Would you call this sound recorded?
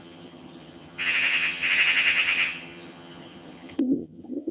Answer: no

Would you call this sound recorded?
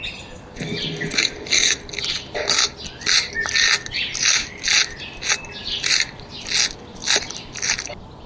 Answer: yes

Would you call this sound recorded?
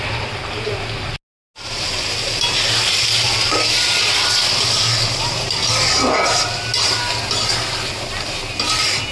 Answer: yes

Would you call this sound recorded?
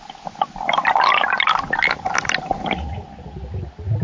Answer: yes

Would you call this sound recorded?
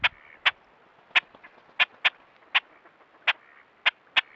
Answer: yes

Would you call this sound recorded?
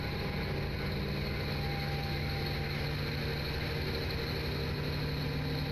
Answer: yes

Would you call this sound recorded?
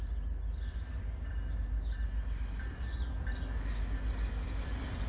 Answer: yes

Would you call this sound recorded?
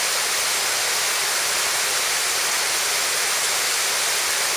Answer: yes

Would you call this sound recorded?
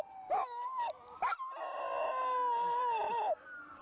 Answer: yes